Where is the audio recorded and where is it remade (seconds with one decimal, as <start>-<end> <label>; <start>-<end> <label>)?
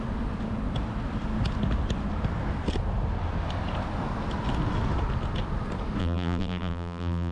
0.0-6.0 recorded; 6.0-7.3 remade